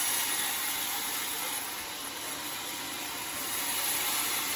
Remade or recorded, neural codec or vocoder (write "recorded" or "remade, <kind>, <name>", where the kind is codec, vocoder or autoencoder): remade, vocoder, BigVGAN v2